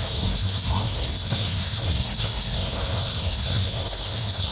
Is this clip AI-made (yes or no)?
yes